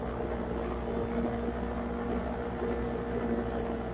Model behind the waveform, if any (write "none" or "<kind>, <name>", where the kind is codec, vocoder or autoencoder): none